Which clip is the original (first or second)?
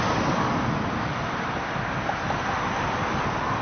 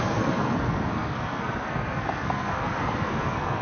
first